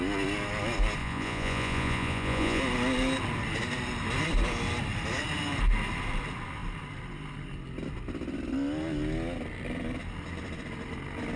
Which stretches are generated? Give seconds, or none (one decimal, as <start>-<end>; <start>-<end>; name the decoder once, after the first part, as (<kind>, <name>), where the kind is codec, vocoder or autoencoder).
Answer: 1.0-2.6 (vocoder, Vocos)